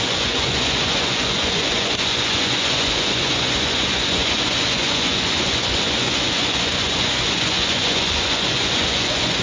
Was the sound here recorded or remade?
remade